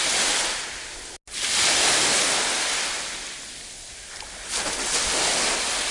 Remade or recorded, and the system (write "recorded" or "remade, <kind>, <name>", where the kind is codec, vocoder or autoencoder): recorded